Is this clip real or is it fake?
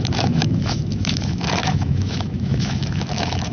fake